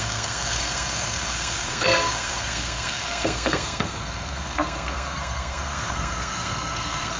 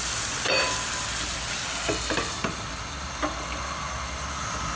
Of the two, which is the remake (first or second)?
first